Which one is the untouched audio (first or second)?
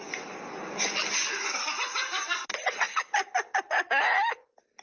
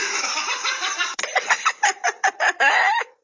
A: first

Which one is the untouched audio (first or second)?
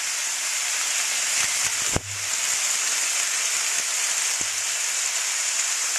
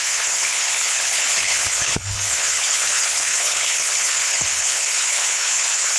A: first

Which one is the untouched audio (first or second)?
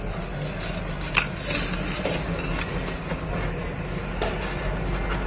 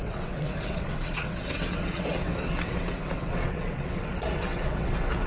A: first